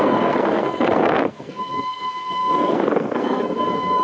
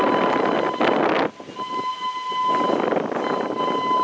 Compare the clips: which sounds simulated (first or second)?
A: first